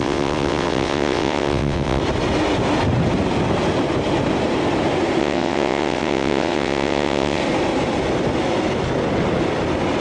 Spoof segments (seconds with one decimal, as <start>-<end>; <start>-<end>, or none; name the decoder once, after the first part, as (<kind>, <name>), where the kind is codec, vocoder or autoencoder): 0.0-2.0 (vocoder, WaveNeXt); 5.2-7.4